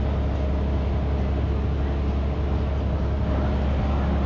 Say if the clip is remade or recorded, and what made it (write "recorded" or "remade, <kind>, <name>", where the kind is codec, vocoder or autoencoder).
recorded